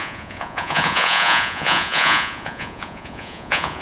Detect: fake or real fake